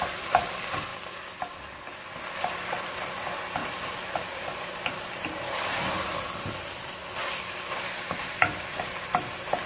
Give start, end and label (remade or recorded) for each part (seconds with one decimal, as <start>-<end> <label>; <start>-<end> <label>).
0.0-9.7 recorded